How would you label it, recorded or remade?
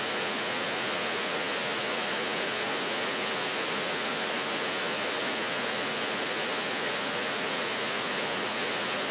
remade